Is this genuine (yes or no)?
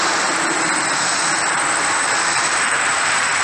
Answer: no